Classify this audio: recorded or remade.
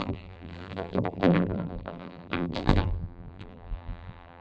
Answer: remade